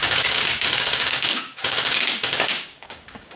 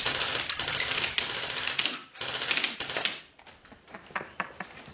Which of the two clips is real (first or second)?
second